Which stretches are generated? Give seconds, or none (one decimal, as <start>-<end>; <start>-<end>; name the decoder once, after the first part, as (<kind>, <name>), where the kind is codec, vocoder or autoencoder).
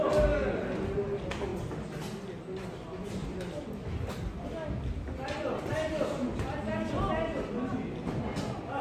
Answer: 1.5-2.0 (vocoder, BigVGAN v2); 3.2-3.9